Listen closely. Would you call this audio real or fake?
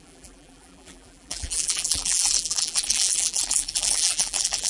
fake